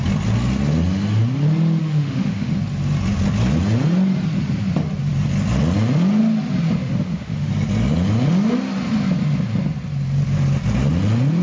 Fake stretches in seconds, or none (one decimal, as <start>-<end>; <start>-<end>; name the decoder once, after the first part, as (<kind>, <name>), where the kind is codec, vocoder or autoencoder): 1.8-2.5 (autoencoder, DAC-VAE); 6.8-7.5